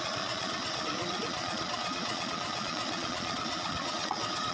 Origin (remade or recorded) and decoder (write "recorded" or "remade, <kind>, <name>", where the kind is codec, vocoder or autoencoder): remade, vocoder, Vocos